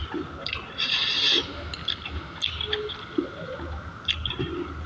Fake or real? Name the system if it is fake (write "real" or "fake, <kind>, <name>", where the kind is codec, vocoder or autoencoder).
real